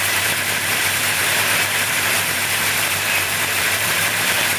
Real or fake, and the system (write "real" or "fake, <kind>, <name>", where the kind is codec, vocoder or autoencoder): fake, vocoder, BigVGAN v2